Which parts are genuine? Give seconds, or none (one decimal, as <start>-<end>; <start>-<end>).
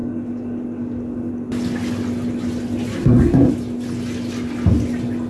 0.0-2.9; 3.5-5.3